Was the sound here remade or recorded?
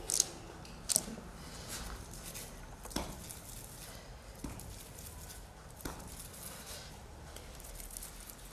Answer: recorded